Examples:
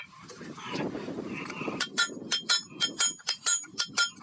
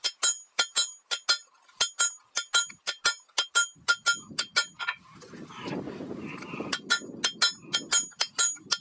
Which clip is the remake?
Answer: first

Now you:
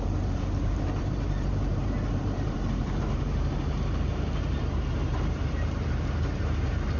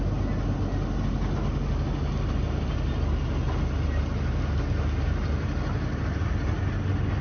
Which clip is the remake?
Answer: first